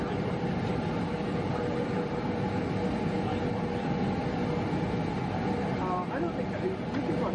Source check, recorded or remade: recorded